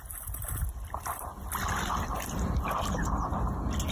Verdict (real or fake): real